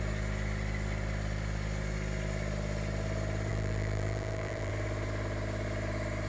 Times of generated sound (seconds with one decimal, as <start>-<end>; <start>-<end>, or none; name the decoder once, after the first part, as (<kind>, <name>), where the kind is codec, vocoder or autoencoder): 3.5-4.7 (vocoder, BigVGAN v2)